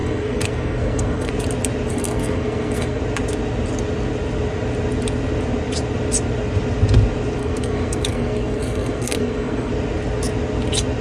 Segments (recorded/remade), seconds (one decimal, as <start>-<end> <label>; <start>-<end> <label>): 0.0-1.3 remade; 1.3-1.9 recorded; 1.9-3.0 remade; 3.0-7.4 recorded; 7.4-9.7 remade; 9.7-11.0 recorded